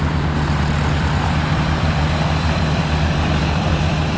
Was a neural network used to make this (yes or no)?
yes